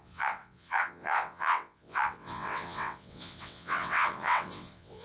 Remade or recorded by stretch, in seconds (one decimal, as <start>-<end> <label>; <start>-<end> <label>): 0.0-5.0 remade